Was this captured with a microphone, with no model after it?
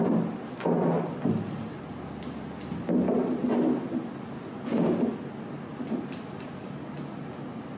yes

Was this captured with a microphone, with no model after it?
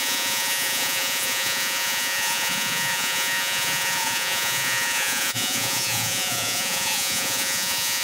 no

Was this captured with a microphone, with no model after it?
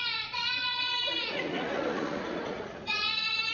no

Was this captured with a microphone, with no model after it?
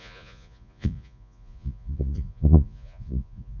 no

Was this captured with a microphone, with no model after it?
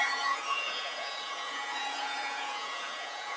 no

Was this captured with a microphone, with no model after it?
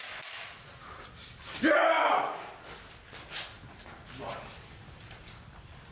yes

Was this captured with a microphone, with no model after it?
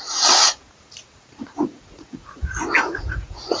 no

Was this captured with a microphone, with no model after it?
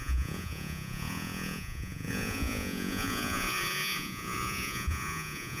no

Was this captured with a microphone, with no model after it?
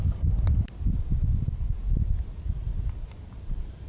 yes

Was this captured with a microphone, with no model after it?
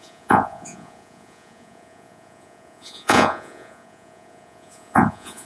no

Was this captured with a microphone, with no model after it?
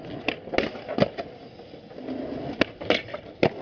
yes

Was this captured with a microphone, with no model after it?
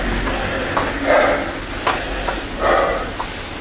yes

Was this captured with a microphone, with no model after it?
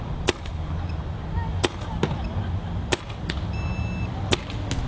yes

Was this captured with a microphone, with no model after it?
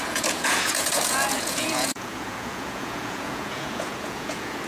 no